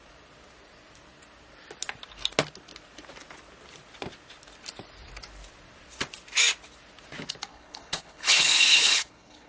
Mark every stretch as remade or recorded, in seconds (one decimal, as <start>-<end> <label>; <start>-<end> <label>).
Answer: 0.0-7.5 recorded; 7.5-9.5 remade